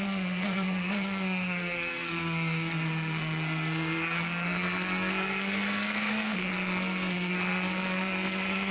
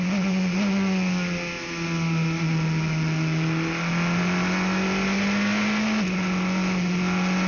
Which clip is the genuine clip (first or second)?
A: second